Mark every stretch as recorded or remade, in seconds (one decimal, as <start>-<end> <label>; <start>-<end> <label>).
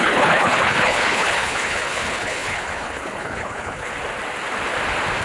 0.0-3.9 remade; 3.9-5.2 recorded